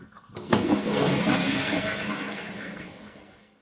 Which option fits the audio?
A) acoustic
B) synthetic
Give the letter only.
B